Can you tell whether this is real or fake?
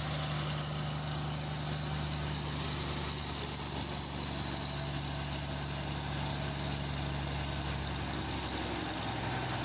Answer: real